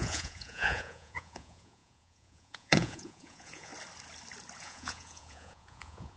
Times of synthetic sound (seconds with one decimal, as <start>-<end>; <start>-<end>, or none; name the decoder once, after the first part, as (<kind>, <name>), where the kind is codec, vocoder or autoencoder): 0.0-3.7 (vocoder, Vocos); 4.6-6.2